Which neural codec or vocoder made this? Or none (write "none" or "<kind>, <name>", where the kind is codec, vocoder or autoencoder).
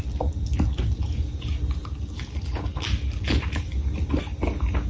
none